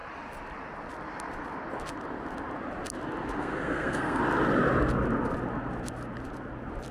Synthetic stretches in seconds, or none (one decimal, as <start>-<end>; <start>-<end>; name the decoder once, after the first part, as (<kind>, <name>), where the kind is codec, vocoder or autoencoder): 3.4-4.2 (codec, SNAC)